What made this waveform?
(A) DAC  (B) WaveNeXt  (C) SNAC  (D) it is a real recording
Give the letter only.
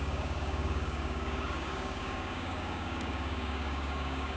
A